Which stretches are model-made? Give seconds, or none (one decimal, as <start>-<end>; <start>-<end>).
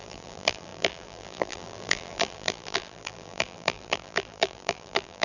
0.0-5.2